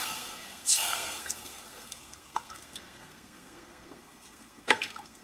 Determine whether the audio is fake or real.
fake